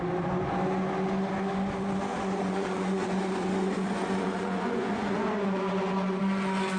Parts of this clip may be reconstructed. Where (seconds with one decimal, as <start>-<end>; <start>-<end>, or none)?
2.1-6.2